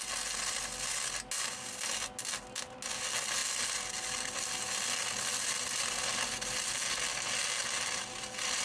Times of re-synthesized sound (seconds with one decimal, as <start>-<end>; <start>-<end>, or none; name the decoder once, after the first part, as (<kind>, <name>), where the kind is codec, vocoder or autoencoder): none